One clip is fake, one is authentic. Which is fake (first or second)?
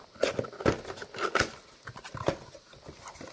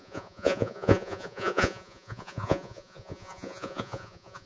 second